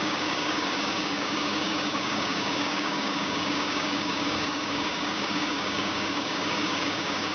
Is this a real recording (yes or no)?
no